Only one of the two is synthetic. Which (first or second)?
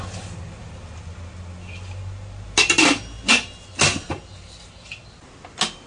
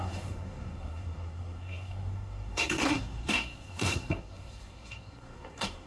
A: second